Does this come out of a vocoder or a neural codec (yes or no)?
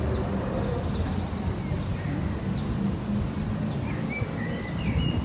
no